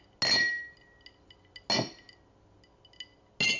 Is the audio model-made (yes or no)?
no